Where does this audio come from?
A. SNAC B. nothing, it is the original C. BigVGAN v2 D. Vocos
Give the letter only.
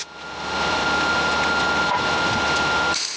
B